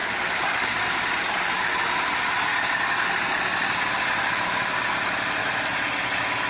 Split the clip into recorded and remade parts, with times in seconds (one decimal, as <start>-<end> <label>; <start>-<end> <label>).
0.0-0.8 recorded; 0.8-2.5 remade; 2.5-4.3 recorded; 4.3-5.4 remade; 5.4-6.5 recorded